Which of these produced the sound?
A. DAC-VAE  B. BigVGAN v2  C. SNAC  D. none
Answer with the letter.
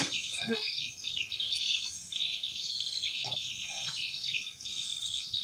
C